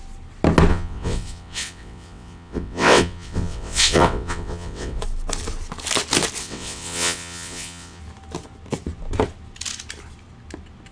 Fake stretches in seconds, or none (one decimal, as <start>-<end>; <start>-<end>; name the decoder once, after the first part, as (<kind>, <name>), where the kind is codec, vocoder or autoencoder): 0.7-5.0 (vocoder, WaveNeXt); 6.4-8.0